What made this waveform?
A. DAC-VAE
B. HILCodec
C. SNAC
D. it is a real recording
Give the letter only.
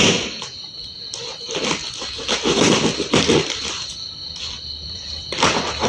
D